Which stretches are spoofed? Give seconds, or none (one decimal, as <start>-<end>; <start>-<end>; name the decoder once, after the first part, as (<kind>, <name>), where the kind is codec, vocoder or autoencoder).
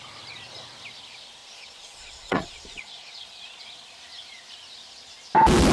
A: 1.4-3.6 (vocoder, Vocos)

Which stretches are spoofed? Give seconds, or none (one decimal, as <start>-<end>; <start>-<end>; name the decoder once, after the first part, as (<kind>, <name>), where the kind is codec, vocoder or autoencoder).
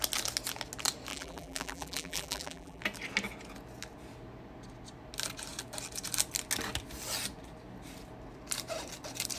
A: 1.1-2.8 (vocoder, BigVGAN v2)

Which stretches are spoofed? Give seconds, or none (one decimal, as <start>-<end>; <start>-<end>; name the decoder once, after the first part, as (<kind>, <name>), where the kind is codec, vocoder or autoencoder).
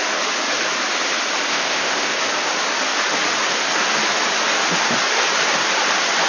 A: 1.5-2.2 (codec, ZipCodec)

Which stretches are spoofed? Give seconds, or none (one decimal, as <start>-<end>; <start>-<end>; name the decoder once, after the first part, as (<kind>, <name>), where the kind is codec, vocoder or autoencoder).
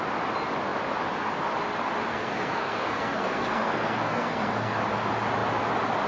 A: 2.1-4.8 (codec, SNAC)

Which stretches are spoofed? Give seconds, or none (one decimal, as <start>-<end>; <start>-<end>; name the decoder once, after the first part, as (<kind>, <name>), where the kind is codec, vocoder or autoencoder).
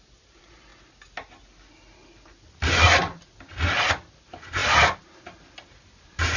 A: 0.0-0.7 (vocoder, BigVGAN v2); 3.9-6.4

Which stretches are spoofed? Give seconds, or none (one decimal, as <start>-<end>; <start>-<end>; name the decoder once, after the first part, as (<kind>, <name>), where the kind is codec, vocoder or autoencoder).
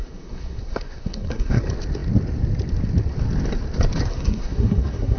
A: 0.0-1.6 (codec, SNAC); 4.1-5.2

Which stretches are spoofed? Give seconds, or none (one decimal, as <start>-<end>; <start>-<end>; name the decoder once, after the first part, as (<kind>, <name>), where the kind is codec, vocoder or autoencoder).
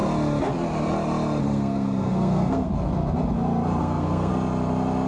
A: 1.4-2.7 (codec, SNAC); 3.8-4.3